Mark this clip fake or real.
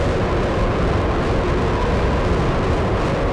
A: real